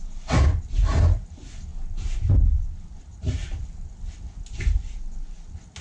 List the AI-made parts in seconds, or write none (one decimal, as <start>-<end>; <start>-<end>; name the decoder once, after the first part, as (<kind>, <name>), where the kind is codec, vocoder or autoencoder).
1.7-2.6 (vocoder, BigVGAN v2); 3.4-3.9